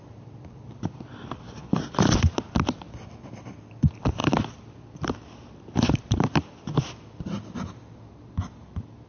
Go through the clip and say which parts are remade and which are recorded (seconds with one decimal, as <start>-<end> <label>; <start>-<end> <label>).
0.0-9.1 recorded